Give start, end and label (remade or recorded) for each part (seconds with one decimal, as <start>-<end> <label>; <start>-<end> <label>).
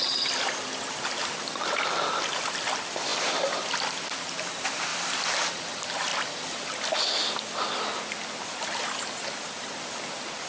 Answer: 0.0-4.9 remade; 4.9-5.5 recorded; 5.5-6.1 remade; 6.1-9.4 recorded; 9.4-10.5 remade